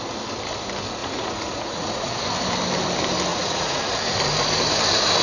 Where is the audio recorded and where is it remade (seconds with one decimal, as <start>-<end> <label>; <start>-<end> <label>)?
0.0-1.0 recorded; 1.0-2.1 remade; 2.1-3.3 recorded; 3.3-3.8 remade; 3.8-5.2 recorded